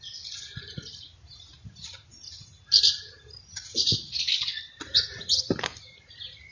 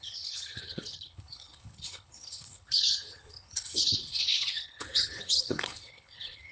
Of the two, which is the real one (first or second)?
first